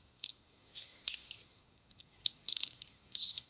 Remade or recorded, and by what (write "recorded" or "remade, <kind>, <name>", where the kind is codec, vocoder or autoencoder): remade, codec, SNAC